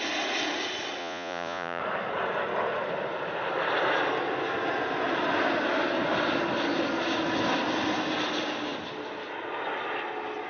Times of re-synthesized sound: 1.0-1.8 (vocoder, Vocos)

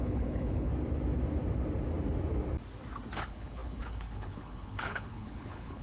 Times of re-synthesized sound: 0.0-0.7 (codec, HILCodec); 3.2-5.8